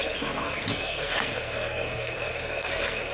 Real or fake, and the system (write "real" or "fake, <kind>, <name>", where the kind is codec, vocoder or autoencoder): fake, codec, SNAC